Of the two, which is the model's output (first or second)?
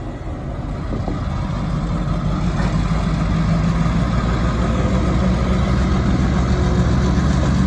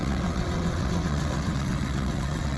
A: second